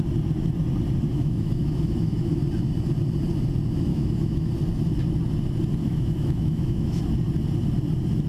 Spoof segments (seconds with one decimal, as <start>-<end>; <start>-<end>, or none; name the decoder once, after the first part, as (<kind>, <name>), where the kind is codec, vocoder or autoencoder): 1.1-2.4 (autoencoder, DAC-VAE); 3.9-4.5; 5.8-7.0

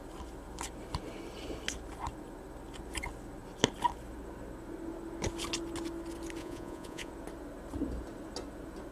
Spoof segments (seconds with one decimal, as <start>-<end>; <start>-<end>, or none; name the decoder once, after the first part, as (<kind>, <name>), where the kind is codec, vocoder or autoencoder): 6.4-7.1 (vocoder, Vocos)